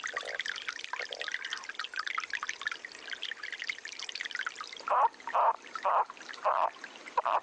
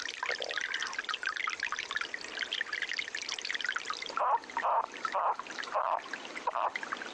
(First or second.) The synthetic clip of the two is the second